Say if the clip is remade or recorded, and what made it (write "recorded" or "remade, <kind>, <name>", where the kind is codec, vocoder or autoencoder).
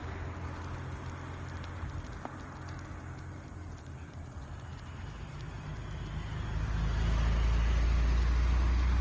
recorded